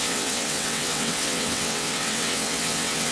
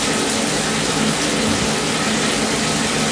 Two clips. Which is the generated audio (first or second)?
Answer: first